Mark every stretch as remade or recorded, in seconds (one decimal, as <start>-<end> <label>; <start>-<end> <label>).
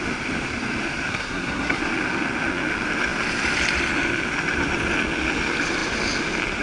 0.0-1.1 recorded; 1.1-1.8 remade; 1.8-6.6 recorded